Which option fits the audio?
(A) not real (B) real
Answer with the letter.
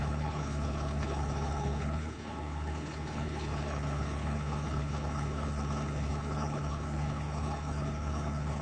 A